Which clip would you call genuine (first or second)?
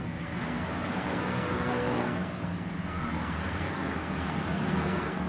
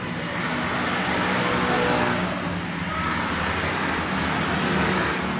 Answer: second